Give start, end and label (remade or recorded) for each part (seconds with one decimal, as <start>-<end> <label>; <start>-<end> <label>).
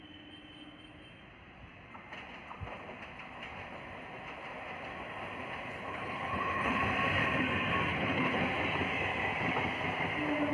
0.0-5.7 recorded; 5.7-6.8 remade; 6.8-7.9 recorded; 7.9-8.4 remade; 8.4-10.5 recorded